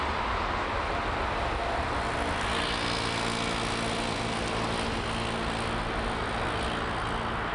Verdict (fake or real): real